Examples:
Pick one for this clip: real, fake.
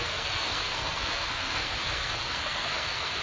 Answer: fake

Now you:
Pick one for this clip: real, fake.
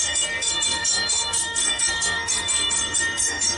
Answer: fake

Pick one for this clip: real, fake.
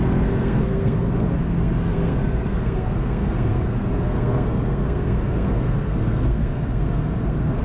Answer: fake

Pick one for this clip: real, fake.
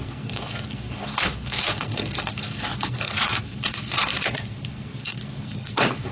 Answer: fake